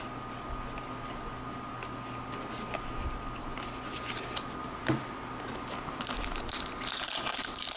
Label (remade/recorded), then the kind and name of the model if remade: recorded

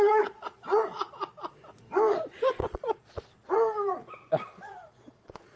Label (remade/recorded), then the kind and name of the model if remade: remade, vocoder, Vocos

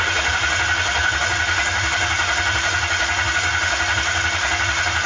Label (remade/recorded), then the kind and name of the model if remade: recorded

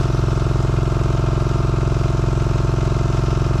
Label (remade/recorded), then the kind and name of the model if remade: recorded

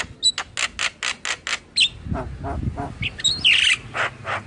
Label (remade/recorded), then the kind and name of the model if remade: recorded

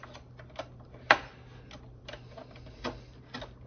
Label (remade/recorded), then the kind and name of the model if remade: recorded